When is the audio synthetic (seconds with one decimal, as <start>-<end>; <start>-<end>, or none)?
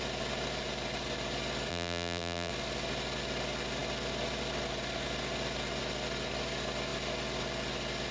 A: 1.7-2.5